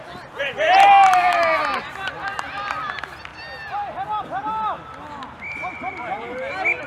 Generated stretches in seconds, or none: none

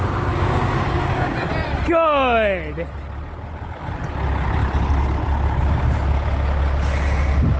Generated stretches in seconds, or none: 0.0-1.5 (codec, DAC)

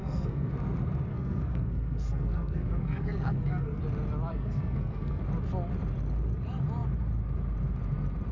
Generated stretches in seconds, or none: 0.0-0.5 (codec, SNAC); 1.1-3.8; 4.3-5.2

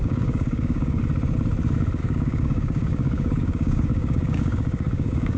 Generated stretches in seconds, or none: 0.0-1.0 (codec, DAC); 2.0-5.4

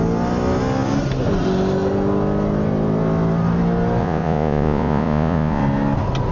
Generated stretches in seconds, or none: 4.0-5.6 (vocoder, Vocos)

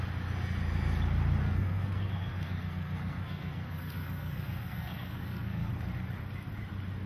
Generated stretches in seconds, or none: 1.4-5.7 (codec, SNAC)

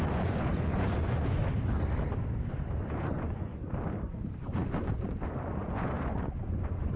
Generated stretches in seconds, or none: 0.0-1.4 (vocoder, Vocos); 2.5-3.6; 4.4-7.0